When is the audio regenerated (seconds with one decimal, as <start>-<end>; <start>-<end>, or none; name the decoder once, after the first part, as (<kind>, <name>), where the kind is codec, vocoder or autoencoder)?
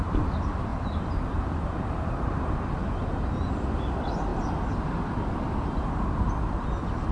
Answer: 0.7-2.5 (vocoder, BigVGAN v2)